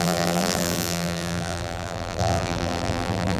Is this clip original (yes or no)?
no